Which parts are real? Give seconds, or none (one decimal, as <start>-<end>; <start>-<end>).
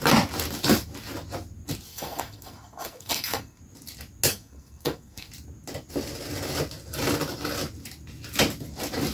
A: 0.0-1.9; 3.6-4.3; 5.3-9.1